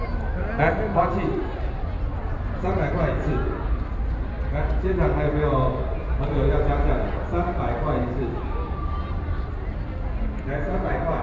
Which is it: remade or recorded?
recorded